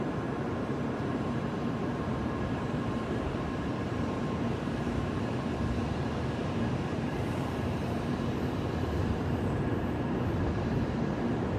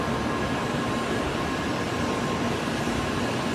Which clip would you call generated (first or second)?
first